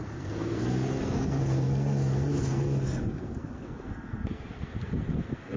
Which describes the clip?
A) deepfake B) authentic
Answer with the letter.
A